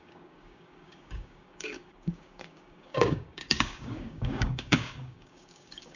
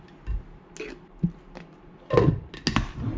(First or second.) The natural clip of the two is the second